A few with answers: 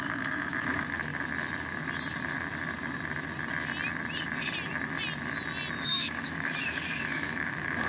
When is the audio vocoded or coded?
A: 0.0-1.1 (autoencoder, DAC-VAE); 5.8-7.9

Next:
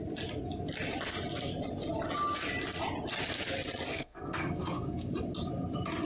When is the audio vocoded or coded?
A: 3.9-5.1 (codec, SNAC)

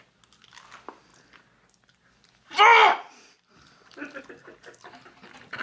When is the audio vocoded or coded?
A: none

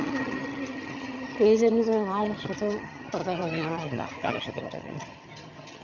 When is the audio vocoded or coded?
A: 0.0-5.8 (vocoder, HiFi-GAN)

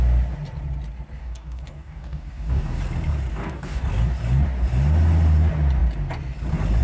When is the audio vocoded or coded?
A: 1.2-2.8 (codec, DAC); 3.3-3.8

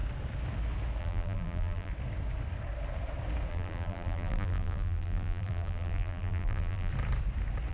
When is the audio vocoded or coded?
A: 1.0-1.9 (vocoder, BigVGAN v2); 3.5-6.9

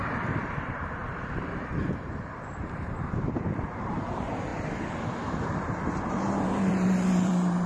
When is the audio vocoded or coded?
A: 0.0-4.5 (vocoder, BigVGAN v2); 6.1-7.7

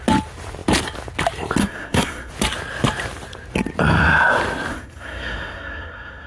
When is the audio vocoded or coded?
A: 1.6-2.3 (codec, SNAC); 4.7-6.3